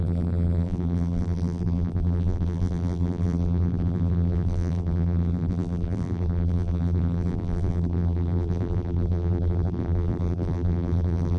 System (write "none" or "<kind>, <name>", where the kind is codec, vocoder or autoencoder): vocoder, BigVGAN v2